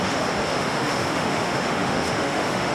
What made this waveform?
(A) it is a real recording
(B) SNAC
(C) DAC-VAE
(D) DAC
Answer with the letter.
C